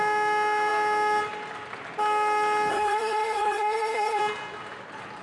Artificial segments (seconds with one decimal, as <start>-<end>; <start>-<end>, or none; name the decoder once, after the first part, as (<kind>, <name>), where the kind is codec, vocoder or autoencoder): 2.7-4.2 (codec, SNAC)